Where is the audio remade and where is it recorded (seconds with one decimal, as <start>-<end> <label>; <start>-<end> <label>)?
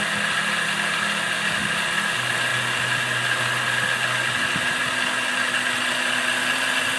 0.0-7.0 recorded